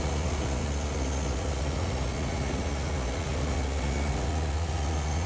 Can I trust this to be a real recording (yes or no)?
no